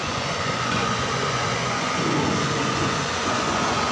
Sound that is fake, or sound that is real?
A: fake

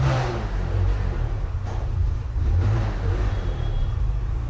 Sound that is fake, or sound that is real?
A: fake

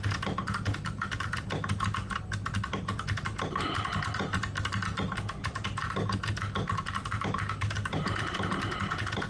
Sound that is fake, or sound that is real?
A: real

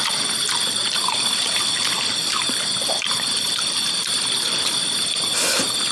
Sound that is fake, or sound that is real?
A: fake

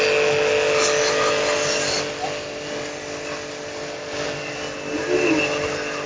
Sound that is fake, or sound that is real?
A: real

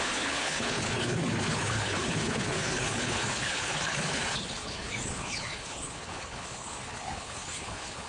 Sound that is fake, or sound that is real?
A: fake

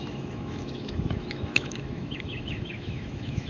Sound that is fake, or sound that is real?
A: fake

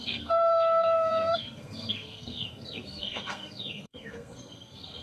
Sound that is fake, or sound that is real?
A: fake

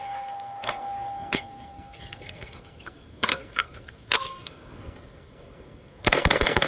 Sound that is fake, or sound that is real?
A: fake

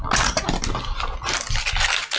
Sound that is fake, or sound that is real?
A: real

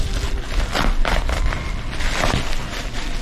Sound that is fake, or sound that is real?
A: real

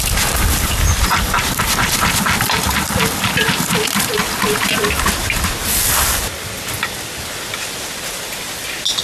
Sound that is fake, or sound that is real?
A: real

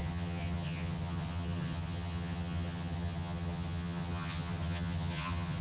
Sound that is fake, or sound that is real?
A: fake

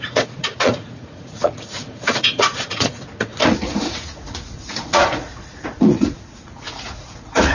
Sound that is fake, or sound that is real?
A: fake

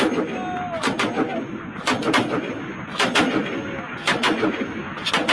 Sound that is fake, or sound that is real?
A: real